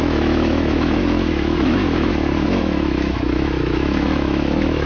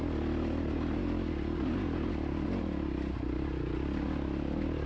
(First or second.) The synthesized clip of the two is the first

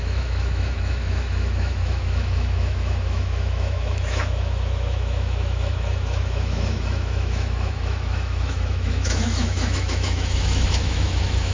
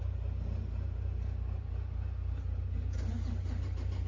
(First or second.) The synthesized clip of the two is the first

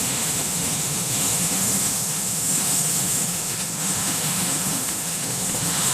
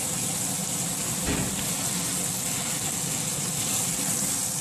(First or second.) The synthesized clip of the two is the first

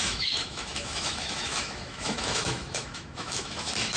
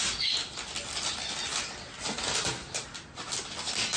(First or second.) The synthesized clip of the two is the first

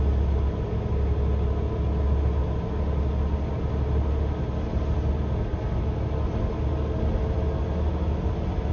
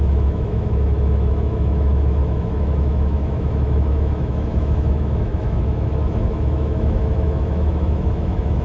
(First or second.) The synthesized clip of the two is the second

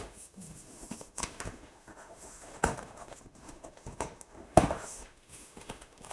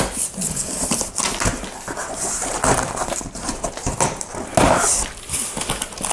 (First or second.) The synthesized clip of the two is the first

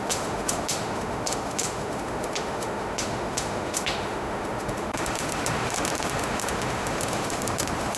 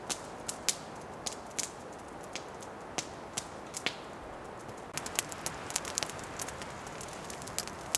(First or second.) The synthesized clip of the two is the first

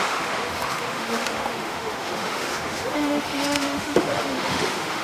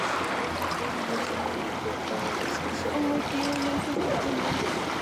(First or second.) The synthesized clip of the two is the first